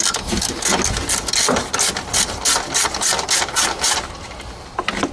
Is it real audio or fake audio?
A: real